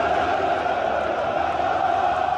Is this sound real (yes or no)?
yes